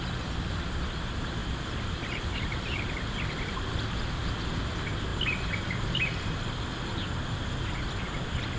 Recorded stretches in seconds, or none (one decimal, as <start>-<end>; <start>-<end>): 0.0-1.4; 2.9-8.6